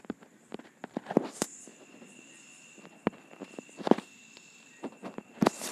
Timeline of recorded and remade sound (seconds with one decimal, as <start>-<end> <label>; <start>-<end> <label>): 0.0-1.7 remade; 1.7-3.6 recorded; 3.6-5.7 remade